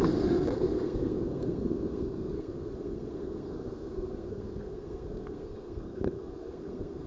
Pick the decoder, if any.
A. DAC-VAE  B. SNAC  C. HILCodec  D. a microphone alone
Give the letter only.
B